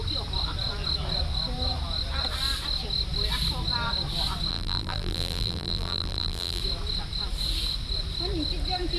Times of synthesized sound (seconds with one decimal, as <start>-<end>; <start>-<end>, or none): 4.5-6.6